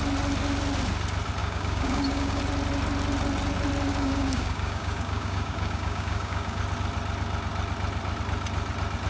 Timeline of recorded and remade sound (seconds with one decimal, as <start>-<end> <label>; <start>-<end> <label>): 0.0-1.4 recorded; 1.4-2.4 remade; 2.4-3.9 recorded; 3.9-6.6 remade; 6.6-9.1 recorded